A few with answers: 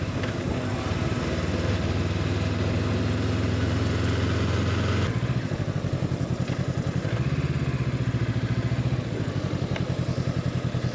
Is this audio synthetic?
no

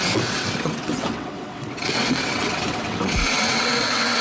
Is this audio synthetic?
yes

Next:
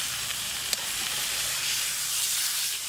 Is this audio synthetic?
yes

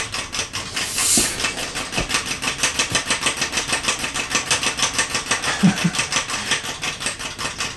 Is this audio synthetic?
no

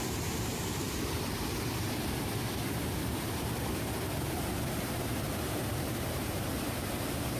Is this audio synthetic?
yes